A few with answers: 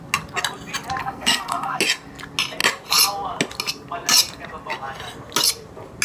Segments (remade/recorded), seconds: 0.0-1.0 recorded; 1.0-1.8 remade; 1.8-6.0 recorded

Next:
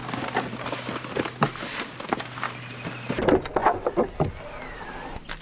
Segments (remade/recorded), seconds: 0.0-5.4 recorded

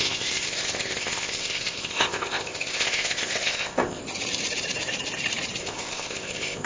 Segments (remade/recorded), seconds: 0.0-4.0 remade; 4.0-5.6 recorded; 5.6-6.7 remade

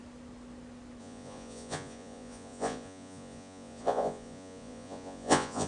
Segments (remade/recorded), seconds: 0.0-1.0 recorded; 1.0-5.7 remade